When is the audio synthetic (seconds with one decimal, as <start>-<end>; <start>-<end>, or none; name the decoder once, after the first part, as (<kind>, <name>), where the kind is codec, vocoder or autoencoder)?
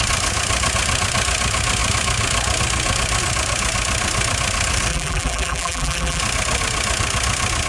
4.9-6.2 (vocoder, BigVGAN v2)